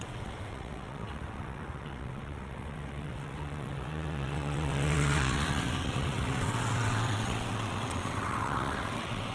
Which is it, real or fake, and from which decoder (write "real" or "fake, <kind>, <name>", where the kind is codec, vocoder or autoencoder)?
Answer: fake, vocoder, WaveNeXt